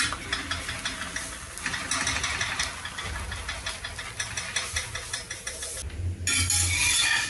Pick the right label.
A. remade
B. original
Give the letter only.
B